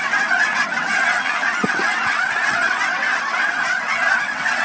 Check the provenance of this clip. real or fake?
fake